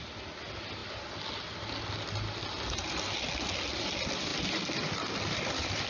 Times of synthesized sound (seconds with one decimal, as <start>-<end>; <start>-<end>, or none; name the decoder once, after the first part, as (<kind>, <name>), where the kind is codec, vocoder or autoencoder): none